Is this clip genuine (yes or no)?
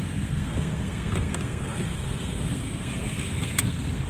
no